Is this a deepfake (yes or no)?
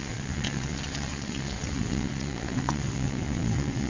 yes